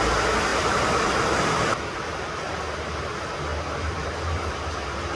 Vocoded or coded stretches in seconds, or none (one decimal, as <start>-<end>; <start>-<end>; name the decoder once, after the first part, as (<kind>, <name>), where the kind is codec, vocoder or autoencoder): 0.5-1.8 (vocoder, BigVGAN v2); 3.5-4.7